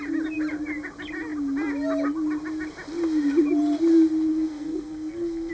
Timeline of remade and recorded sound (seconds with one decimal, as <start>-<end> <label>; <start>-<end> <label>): 0.0-4.3 recorded; 4.3-5.5 remade